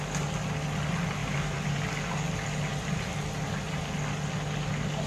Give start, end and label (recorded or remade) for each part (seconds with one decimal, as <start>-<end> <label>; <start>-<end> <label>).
0.0-1.2 recorded; 1.2-1.8 remade; 1.8-2.7 recorded; 2.7-3.8 remade; 3.8-5.1 recorded